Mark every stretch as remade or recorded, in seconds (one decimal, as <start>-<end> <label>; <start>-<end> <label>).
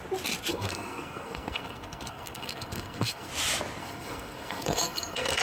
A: 0.0-0.5 recorded; 0.5-3.3 remade; 3.3-3.8 recorded; 3.8-5.4 remade